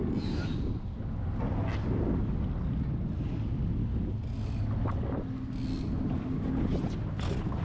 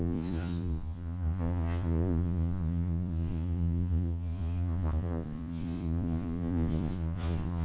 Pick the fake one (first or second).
second